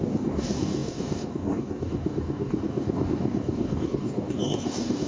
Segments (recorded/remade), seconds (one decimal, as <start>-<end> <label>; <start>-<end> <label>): 0.0-5.1 remade